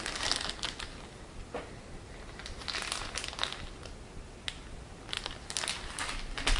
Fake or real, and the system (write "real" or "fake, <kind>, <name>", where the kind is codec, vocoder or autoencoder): real